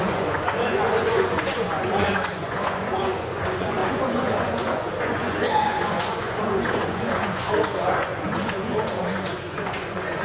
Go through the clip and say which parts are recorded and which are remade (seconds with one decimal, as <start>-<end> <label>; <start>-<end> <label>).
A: 0.0-10.2 remade

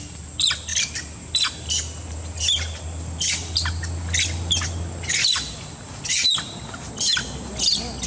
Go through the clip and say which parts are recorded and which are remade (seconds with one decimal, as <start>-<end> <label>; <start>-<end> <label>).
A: 0.0-8.1 recorded